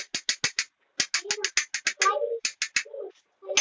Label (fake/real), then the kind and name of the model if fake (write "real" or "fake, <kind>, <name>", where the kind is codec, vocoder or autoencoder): real